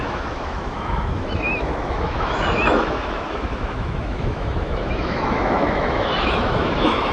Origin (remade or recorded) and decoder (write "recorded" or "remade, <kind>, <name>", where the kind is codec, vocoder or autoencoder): remade, autoencoder, DAC-VAE